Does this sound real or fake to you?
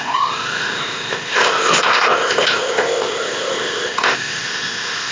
fake